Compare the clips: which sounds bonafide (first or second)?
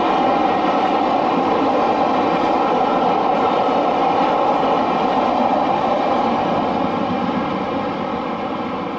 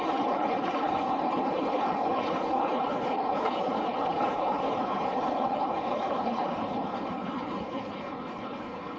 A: first